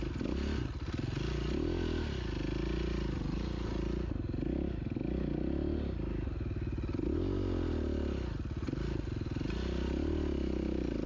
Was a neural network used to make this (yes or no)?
no